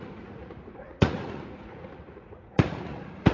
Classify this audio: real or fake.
fake